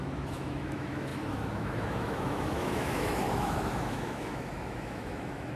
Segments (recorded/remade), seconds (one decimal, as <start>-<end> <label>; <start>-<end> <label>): 0.0-5.6 remade